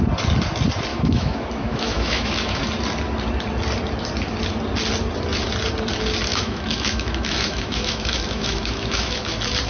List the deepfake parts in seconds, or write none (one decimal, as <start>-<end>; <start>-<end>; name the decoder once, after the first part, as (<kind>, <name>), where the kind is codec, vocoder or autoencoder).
0.9-2.6 (autoencoder, DAC-VAE); 6.3-9.2